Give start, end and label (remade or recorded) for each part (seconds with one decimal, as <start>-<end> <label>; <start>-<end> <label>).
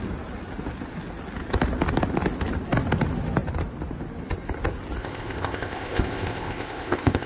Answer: 0.0-5.0 recorded; 5.0-7.3 remade